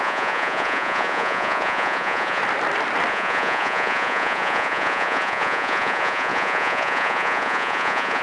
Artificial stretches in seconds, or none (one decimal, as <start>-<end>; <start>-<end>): 0.0-2.4; 3.1-8.2